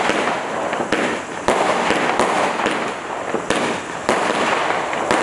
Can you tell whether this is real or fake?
real